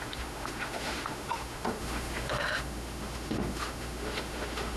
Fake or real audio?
fake